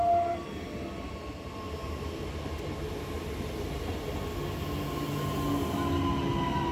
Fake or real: real